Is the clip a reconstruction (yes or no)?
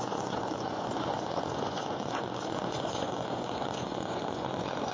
yes